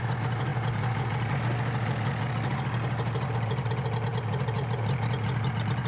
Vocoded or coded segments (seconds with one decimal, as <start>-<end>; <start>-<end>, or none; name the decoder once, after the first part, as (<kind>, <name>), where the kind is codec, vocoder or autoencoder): none